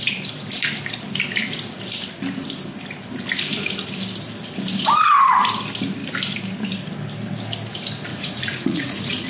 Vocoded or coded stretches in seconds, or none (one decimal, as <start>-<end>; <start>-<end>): 8.1-9.3